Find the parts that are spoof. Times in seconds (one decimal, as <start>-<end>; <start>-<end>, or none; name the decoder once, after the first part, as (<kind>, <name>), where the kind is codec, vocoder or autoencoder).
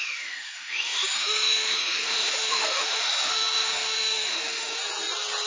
0.0-4.8 (autoencoder, DAC-VAE)